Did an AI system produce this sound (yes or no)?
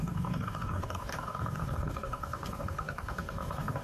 yes